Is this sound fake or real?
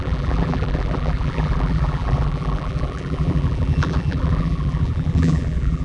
fake